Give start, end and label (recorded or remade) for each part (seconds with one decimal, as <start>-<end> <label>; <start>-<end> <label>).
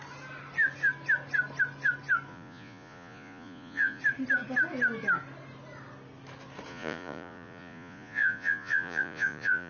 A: 0.0-2.3 recorded; 2.3-4.0 remade; 4.0-6.7 recorded; 6.7-9.7 remade